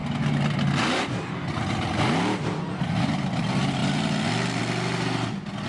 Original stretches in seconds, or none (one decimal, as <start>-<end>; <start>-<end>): 0.0-5.7